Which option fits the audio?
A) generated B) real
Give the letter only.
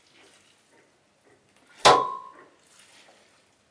B